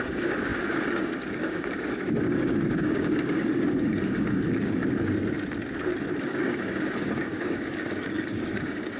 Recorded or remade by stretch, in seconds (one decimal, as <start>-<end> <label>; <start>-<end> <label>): 0.0-4.8 remade; 4.8-6.2 recorded; 6.2-9.0 remade